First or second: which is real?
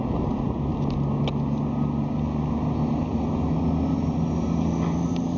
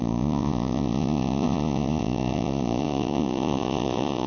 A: first